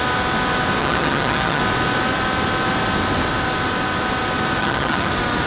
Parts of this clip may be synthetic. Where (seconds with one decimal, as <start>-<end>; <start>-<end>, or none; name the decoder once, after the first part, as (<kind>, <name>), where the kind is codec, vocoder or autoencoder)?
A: 0.8-1.6 (vocoder, HiFi-GAN); 4.6-5.1